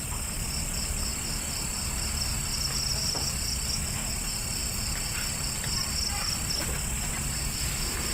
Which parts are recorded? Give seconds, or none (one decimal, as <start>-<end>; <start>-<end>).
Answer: 0.0-8.1